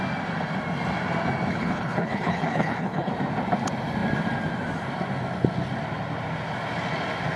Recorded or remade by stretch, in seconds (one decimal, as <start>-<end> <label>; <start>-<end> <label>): 0.0-1.5 recorded; 1.5-3.1 remade; 3.1-7.4 recorded